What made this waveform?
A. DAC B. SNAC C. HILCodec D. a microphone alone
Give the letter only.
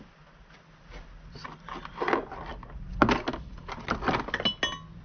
D